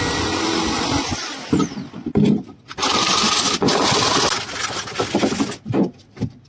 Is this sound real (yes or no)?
yes